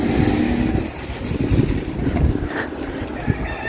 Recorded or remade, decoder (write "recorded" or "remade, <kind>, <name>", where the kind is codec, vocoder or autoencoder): recorded